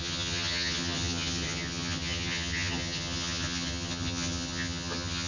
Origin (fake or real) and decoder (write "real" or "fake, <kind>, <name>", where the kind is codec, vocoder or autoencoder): fake, vocoder, HiFi-GAN